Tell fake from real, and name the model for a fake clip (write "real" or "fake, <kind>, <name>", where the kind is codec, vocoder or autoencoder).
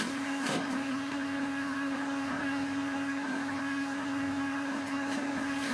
fake, codec, SNAC